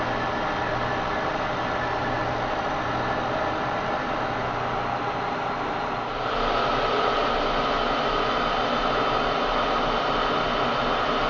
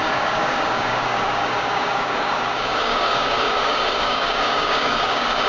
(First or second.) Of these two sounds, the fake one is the second